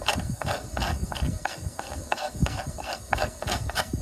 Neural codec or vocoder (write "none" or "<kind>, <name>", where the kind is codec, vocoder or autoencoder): codec, SNAC